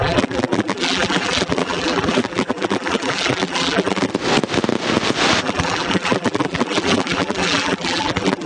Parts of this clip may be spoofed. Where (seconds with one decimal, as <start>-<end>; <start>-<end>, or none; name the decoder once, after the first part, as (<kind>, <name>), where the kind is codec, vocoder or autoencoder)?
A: 0.0-4.1 (vocoder, BigVGAN v2); 5.4-8.5